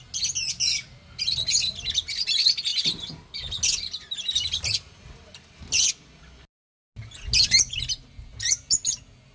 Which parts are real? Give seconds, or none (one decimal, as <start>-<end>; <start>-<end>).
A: 0.0-9.3